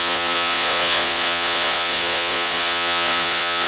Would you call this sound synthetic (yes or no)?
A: yes